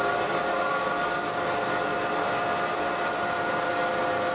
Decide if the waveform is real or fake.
real